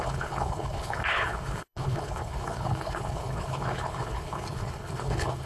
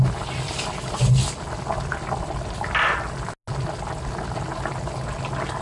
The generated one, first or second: first